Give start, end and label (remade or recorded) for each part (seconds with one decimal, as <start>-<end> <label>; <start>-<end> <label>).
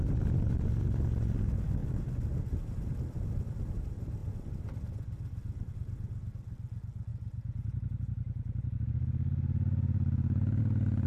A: 0.0-7.1 recorded; 7.1-10.6 remade; 10.6-11.1 recorded